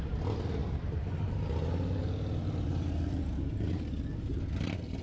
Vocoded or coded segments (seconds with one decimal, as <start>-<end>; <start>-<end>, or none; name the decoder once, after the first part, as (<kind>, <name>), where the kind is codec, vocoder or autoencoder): 0.6-1.2 (vocoder, BigVGAN v2); 2.0-5.0